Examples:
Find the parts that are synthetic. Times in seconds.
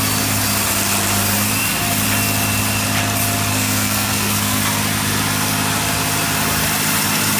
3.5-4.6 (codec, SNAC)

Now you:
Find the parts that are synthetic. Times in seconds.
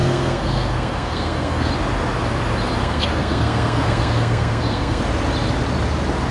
0.0-1.7 (codec, SNAC); 2.8-5.0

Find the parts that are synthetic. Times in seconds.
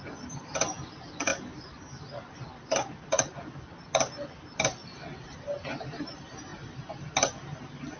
none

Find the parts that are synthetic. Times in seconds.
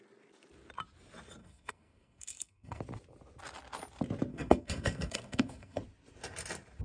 1.4-2.8 (codec, SNAC); 4.3-5.8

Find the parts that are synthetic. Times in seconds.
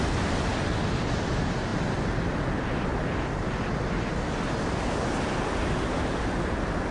none